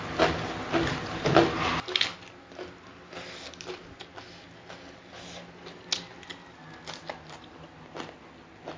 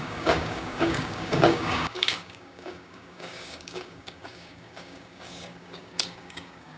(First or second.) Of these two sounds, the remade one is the second